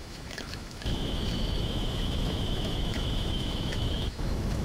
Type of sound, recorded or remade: remade